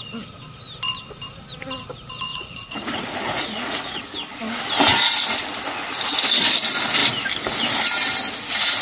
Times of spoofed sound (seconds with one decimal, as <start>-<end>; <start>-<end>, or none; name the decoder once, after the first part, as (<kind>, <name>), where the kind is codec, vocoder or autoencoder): 2.3-4.0 (vocoder, Vocos)